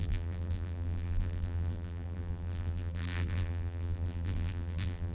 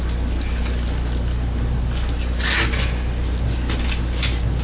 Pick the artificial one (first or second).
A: first